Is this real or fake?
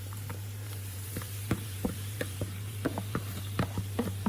fake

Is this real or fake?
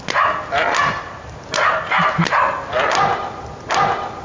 real